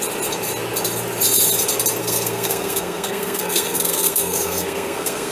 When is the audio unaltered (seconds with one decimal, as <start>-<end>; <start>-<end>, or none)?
0.0-2.0